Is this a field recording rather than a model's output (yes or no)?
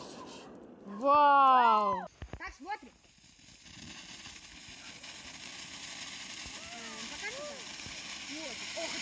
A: yes